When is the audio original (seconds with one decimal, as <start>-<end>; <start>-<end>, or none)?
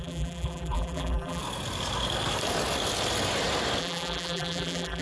1.4-3.8